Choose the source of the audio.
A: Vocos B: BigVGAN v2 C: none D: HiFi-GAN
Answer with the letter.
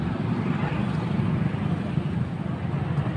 C